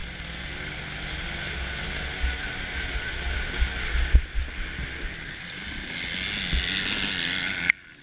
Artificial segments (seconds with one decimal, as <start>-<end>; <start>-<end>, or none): none